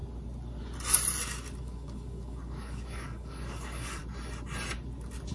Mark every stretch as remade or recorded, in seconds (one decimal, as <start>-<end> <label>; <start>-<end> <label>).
0.0-1.6 recorded; 1.6-4.0 remade; 4.0-5.3 recorded